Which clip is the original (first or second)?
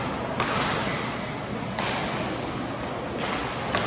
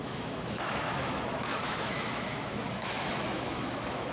first